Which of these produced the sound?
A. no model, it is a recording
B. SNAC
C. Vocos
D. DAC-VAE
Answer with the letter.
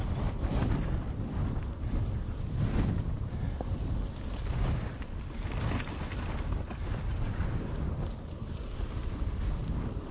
A